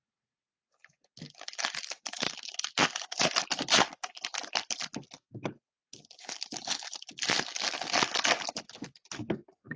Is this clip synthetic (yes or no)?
no